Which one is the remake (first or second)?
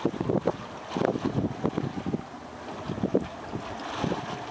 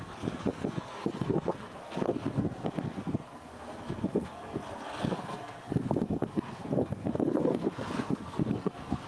second